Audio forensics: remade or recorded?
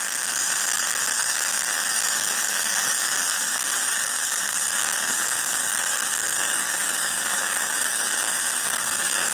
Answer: remade